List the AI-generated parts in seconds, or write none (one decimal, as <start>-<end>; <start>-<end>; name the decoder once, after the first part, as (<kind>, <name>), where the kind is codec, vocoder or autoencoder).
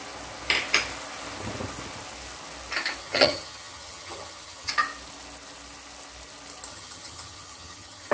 3.0-4.7 (vocoder, HiFi-GAN); 6.7-8.1